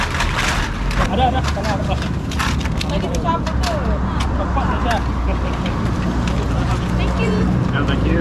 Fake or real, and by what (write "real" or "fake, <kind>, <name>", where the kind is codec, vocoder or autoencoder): real